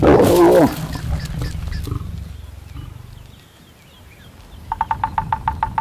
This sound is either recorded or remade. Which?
recorded